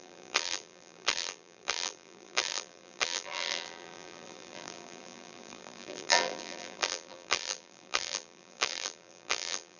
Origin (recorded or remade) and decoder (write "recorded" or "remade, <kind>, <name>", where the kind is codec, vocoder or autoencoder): remade, vocoder, BigVGAN v2